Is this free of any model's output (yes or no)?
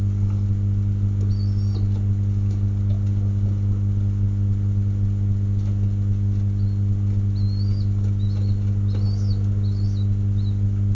yes